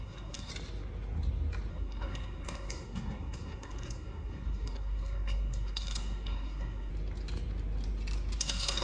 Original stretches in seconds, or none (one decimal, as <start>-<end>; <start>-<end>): 0.5-1.7; 6.9-8.4